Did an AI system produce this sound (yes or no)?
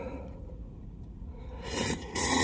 yes